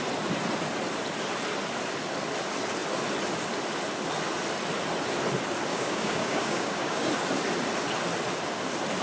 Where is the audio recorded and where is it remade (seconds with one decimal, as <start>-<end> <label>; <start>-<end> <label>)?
0.0-5.7 recorded; 5.7-7.1 remade; 7.1-9.0 recorded